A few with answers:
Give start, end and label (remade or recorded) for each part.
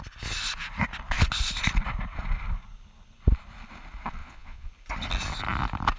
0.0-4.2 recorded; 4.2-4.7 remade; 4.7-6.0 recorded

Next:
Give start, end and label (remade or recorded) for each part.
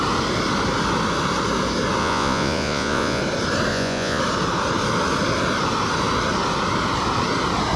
0.0-2.0 recorded; 2.0-3.2 remade; 3.2-3.7 recorded; 3.7-4.2 remade; 4.2-7.8 recorded